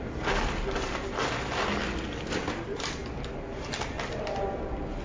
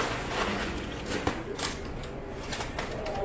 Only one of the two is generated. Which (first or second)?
second